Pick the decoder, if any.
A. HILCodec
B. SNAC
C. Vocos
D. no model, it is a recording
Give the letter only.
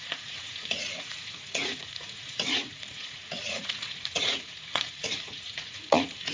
C